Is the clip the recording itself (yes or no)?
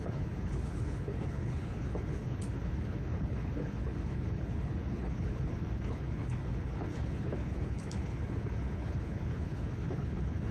no